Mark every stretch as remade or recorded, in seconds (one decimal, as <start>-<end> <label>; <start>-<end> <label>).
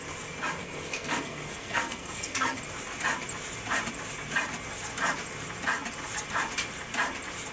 0.0-0.6 recorded; 0.6-2.6 remade; 2.6-7.5 recorded